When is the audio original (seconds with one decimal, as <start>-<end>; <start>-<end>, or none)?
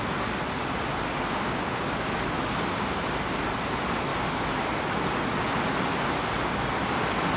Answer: 0.0-7.4